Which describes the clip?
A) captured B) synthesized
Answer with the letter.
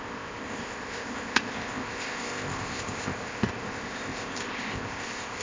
B